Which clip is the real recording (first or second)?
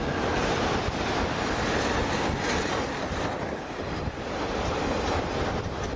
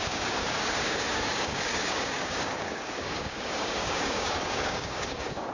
first